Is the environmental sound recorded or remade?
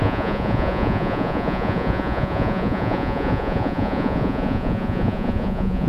remade